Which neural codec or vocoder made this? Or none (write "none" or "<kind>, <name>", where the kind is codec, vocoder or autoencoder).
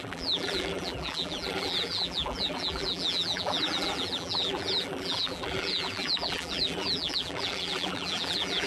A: vocoder, BigVGAN v2